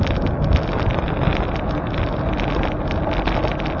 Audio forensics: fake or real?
real